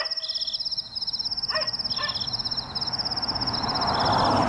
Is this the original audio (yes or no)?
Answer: yes